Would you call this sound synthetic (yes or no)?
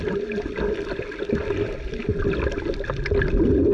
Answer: no